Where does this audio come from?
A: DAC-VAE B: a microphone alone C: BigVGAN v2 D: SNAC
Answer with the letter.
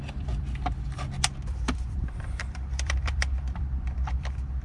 C